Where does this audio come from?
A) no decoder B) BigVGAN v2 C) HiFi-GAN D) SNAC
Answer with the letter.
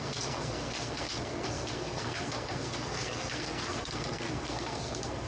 D